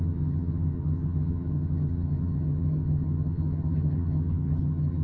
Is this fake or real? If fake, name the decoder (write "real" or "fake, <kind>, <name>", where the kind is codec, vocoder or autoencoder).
fake, vocoder, HiFi-GAN